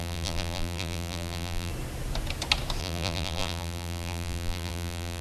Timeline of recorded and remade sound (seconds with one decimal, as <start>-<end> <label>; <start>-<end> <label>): 0.0-1.7 remade; 1.7-2.8 recorded; 2.8-5.2 remade